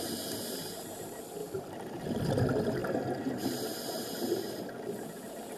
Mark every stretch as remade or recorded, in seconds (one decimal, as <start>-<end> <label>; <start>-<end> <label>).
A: 0.0-1.4 recorded; 1.4-2.3 remade; 2.3-5.6 recorded